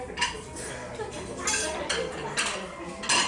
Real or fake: real